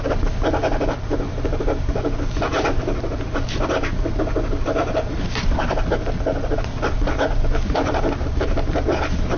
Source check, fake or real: real